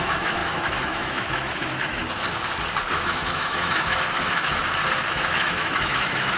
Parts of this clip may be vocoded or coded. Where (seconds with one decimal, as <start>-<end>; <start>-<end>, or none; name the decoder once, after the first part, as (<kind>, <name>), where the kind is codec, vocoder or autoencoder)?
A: 0.0-2.0 (autoencoder, DAC-VAE); 2.9-4.6; 5.1-6.4